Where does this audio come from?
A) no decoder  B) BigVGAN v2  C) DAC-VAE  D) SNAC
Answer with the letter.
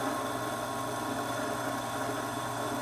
A